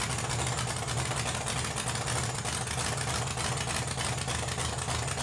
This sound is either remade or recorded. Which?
recorded